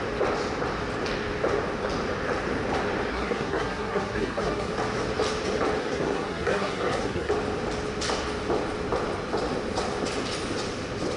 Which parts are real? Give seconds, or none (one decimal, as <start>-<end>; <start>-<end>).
0.0-3.1; 4.7-5.8; 7.3-11.2